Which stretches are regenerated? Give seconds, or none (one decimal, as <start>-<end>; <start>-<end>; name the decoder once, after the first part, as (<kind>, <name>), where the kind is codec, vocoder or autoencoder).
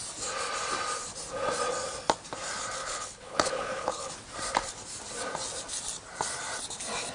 2.8-4.1 (codec, HILCodec)